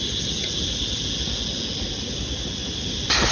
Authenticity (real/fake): real